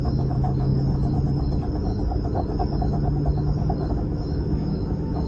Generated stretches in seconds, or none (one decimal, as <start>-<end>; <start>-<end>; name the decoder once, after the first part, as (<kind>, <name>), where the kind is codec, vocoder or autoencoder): 0.0-0.7 (autoencoder, DAC-VAE); 3.9-5.3